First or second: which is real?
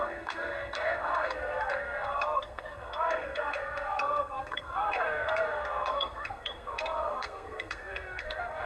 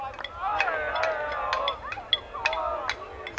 second